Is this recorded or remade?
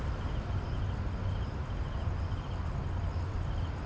recorded